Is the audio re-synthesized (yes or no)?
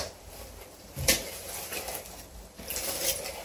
yes